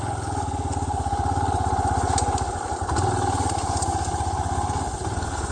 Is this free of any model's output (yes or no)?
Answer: yes